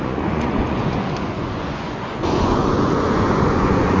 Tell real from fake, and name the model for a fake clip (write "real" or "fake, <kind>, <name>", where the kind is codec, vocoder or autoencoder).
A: fake, vocoder, Vocos